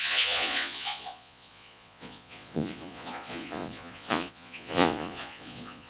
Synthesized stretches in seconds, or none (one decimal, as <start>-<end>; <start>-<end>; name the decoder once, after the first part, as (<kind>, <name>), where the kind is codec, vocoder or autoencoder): 0.0-5.9 (vocoder, Vocos)